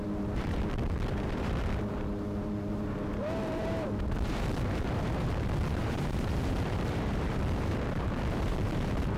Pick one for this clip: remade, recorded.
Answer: remade